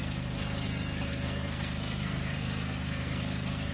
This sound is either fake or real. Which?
fake